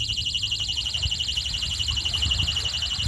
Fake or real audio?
real